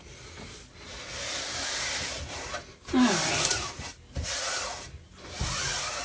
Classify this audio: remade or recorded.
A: recorded